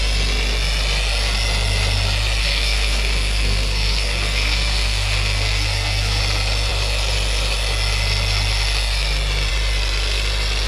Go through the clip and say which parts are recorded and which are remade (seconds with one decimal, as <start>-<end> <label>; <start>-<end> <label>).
0.0-2.4 recorded; 2.4-6.2 remade; 6.2-10.7 recorded